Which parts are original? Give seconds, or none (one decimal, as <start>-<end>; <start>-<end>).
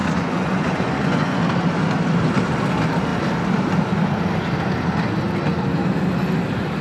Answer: 1.4-6.8